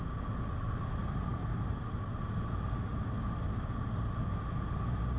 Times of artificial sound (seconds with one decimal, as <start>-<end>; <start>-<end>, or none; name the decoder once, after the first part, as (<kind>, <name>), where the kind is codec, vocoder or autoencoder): none